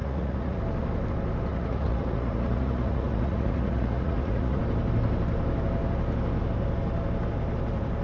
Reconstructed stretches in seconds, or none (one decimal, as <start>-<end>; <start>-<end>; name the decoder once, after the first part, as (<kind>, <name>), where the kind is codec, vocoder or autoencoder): 0.0-0.6 (vocoder, Vocos); 1.5-4.6